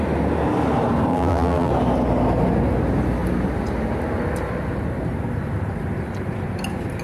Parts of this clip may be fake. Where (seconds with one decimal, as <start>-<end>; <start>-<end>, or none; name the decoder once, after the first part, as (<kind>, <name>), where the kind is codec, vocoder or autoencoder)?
1.1-1.7 (vocoder, BigVGAN v2)